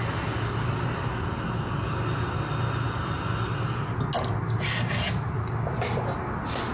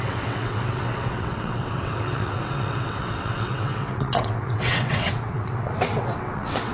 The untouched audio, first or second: first